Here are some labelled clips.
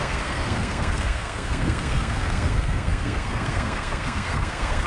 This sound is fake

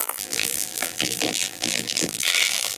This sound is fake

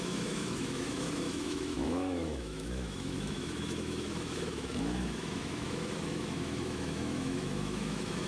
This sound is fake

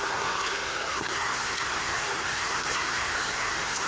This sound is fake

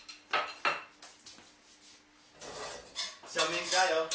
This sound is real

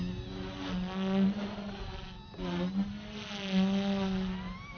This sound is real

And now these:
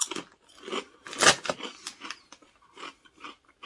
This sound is real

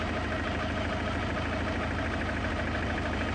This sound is real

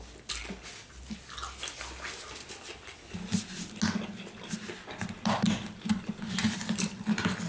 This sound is real